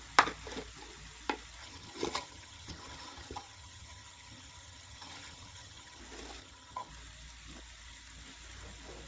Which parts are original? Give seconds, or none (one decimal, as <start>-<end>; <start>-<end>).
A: 0.0-1.6; 6.0-6.4; 6.9-9.1